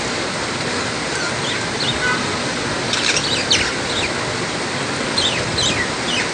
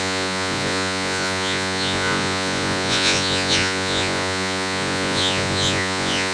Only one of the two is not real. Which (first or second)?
second